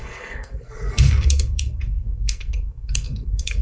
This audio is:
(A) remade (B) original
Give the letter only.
A